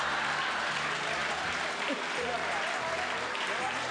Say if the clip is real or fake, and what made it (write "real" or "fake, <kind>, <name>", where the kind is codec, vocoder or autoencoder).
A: real